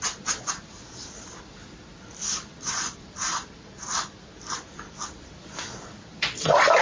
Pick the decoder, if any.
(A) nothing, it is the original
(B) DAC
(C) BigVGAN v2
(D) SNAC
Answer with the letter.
C